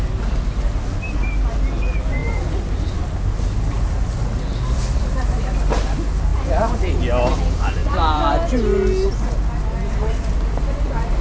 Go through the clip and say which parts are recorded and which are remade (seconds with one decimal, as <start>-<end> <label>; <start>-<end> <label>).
0.0-6.3 recorded; 6.3-6.9 remade; 6.9-7.8 recorded; 7.8-8.3 remade; 8.3-11.2 recorded